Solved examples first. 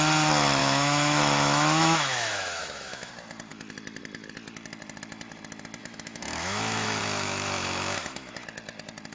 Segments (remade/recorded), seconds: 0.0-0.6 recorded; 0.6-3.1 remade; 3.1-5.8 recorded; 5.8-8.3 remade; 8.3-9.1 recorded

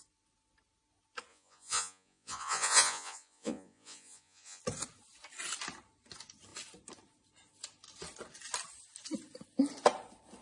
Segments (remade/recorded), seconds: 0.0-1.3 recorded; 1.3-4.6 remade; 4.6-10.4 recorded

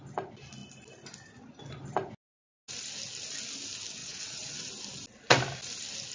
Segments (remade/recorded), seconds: 0.0-4.0 recorded; 4.0-4.7 remade; 4.7-6.1 recorded

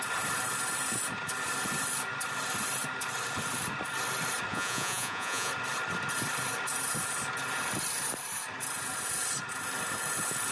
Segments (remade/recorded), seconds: 0.0-4.5 recorded; 4.5-5.5 remade; 5.5-10.5 recorded

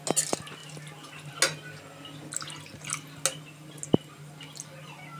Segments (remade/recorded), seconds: 0.0-5.2 recorded

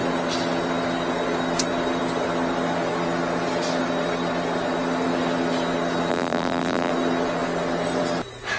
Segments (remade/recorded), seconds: 0.0-6.1 recorded; 6.1-6.9 remade; 6.9-8.6 recorded

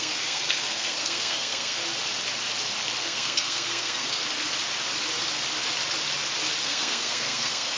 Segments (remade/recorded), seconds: 0.0-1.8 remade; 1.8-3.0 recorded; 3.0-4.2 remade; 4.2-6.6 recorded; 6.6-7.8 remade